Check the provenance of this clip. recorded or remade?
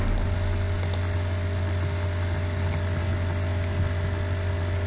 recorded